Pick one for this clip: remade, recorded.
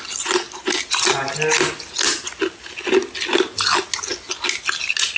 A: recorded